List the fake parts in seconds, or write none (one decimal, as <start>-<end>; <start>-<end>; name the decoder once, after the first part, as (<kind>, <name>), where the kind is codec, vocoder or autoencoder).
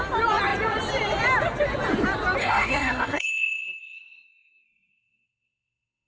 2.4-6.1 (codec, SNAC)